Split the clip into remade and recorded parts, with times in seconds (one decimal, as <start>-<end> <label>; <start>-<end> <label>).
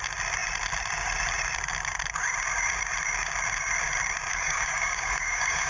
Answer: 0.0-4.3 recorded; 4.3-5.7 remade